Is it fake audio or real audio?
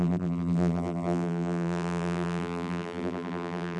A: fake